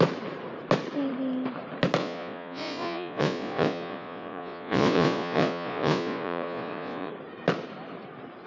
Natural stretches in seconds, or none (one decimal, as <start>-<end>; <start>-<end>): 0.0-2.0; 7.1-8.5